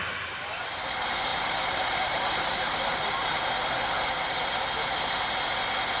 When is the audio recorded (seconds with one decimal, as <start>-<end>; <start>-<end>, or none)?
0.0-1.3; 3.4-6.0

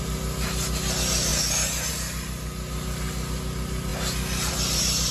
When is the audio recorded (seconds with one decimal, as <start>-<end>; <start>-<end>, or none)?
0.0-5.1

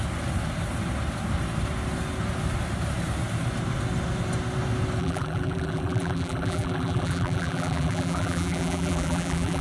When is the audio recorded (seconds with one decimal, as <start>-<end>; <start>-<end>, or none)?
0.0-5.0